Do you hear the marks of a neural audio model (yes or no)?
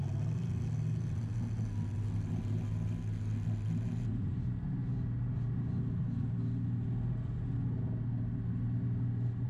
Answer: no